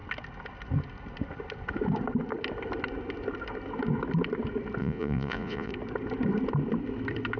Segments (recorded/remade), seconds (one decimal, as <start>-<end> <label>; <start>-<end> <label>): 0.0-4.8 recorded; 4.8-5.7 remade; 5.7-7.4 recorded